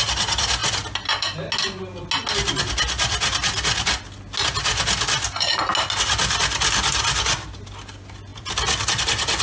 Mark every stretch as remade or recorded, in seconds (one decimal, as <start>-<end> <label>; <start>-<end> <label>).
0.0-9.4 recorded